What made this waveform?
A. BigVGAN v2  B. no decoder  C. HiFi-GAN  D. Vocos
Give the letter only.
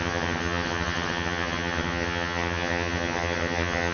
C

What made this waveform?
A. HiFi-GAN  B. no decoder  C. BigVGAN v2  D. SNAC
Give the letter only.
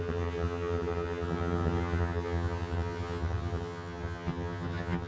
A